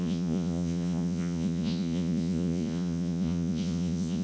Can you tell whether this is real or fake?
fake